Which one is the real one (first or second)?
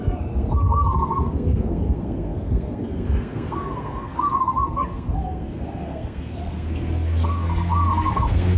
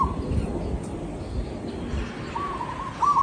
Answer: second